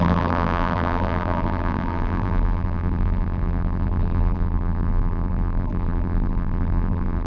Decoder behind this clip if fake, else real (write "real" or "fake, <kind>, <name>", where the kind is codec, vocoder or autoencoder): fake, vocoder, BigVGAN v2